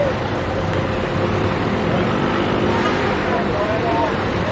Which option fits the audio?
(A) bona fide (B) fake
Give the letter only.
A